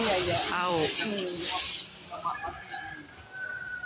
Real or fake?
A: fake